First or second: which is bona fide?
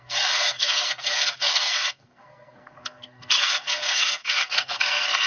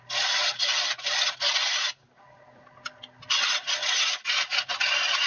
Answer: second